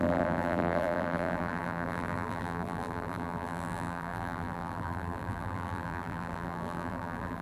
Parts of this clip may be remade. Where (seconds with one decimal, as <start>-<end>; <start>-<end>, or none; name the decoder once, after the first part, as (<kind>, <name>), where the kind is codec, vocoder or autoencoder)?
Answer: 0.0-7.4 (vocoder, BigVGAN v2)